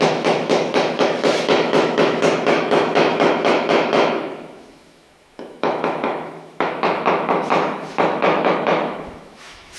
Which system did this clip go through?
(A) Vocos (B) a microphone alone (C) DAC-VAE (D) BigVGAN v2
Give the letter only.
C